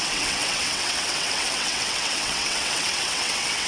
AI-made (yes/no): yes